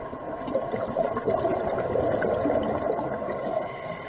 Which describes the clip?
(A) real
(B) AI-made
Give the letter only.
A